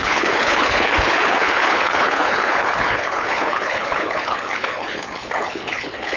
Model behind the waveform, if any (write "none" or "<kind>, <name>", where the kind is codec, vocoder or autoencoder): codec, HILCodec